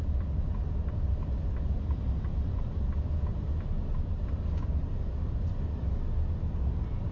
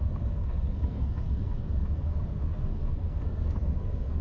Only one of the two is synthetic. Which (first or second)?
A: second